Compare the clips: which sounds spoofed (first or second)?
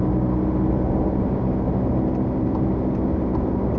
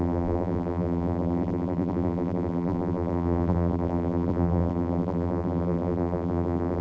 second